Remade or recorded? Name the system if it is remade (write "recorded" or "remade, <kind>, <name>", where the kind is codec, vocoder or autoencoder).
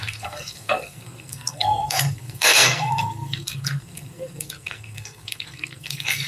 remade, codec, SNAC